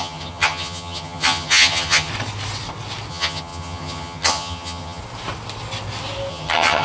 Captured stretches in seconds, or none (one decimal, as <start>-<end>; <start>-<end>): 2.1-3.1; 5.0-6.3